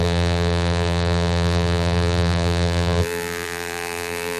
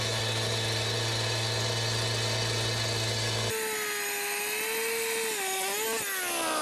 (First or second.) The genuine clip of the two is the second